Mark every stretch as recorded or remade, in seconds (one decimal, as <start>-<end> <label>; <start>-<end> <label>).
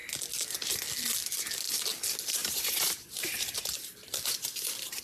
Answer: 0.0-2.4 recorded; 2.4-5.0 remade